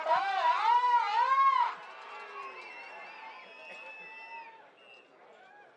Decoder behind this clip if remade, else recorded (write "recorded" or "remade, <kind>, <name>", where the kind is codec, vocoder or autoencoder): recorded